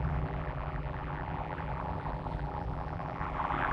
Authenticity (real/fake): fake